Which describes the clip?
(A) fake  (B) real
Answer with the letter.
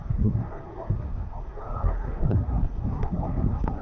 A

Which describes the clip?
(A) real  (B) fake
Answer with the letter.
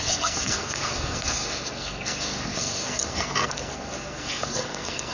B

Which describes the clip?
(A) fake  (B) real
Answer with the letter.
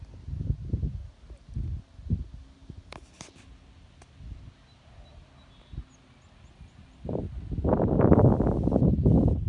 B